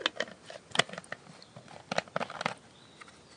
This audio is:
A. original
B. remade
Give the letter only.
A